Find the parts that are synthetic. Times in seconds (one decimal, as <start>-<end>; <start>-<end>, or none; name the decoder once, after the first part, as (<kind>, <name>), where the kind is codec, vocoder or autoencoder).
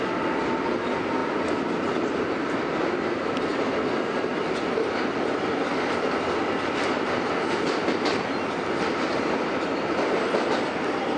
none